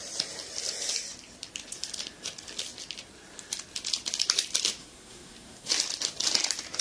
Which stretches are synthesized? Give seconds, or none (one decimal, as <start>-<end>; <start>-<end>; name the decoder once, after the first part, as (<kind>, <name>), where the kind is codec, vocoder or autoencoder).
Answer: 4.8-5.7 (codec, SNAC)